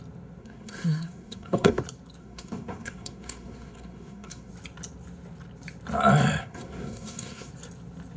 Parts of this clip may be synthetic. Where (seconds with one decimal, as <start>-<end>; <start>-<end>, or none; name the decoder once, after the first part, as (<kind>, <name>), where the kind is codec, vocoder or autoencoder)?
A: 0.4-1.8 (codec, SNAC); 2.2-4.5; 6.4-7.5